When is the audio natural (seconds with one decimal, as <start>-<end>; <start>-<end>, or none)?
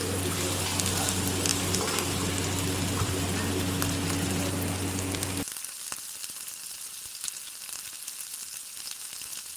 0.0-9.6